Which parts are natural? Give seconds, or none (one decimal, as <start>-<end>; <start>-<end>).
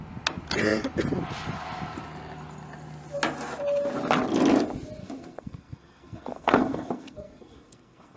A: 0.0-5.0